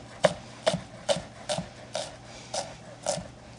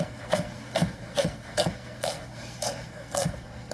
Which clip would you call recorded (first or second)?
first